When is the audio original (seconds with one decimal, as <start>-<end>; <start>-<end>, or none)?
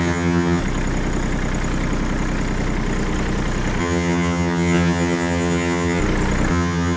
0.6-3.8; 6.0-6.5